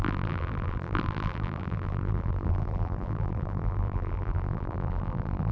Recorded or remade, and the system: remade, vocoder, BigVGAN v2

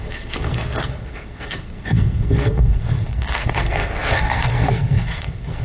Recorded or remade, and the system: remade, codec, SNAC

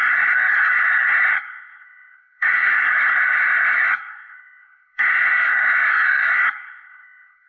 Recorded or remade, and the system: remade, codec, SNAC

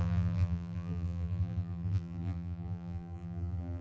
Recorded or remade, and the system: remade, vocoder, BigVGAN v2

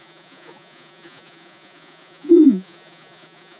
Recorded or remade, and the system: remade, vocoder, Vocos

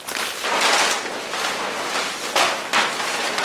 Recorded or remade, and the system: recorded